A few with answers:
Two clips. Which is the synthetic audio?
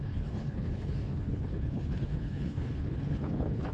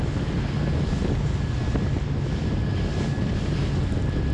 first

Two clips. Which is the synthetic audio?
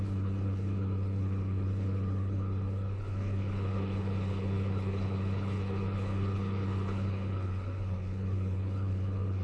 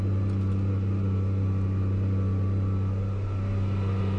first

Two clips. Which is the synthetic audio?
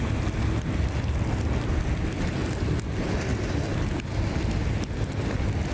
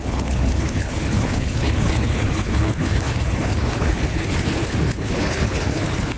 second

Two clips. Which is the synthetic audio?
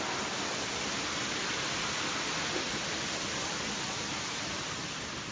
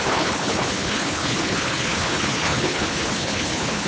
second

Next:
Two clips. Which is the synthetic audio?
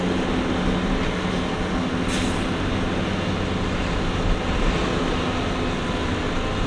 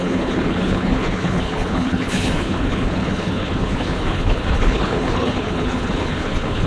second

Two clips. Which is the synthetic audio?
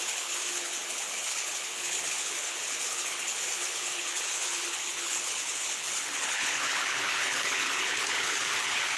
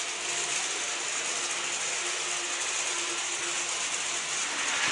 first